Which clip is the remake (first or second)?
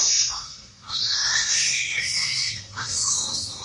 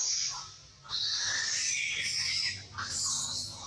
first